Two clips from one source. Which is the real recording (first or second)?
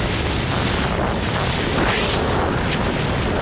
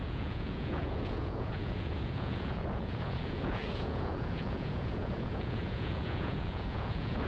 first